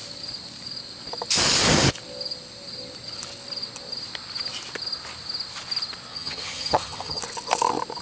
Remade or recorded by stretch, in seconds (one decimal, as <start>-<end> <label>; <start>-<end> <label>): 0.0-6.1 recorded; 6.1-7.2 remade; 7.2-8.0 recorded